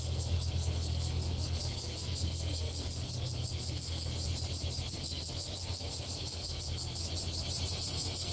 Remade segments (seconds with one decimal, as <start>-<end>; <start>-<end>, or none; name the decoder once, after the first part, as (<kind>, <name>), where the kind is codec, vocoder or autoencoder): 0.0-4.1 (codec, SNAC); 4.9-7.0; 7.7-8.3